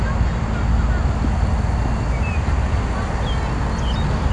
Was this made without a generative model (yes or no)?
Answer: yes